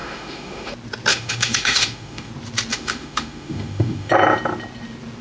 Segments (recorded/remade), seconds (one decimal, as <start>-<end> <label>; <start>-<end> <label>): 0.0-0.7 remade; 0.7-1.1 recorded; 1.1-2.3 remade; 2.3-2.7 recorded; 2.7-4.1 remade; 4.1-5.2 recorded